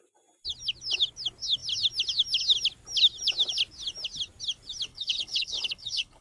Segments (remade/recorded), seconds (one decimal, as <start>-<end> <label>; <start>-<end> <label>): 0.0-4.9 recorded; 4.9-6.2 remade